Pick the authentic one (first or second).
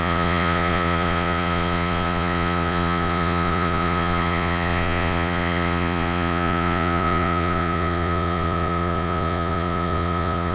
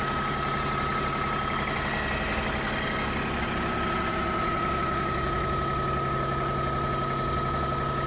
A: second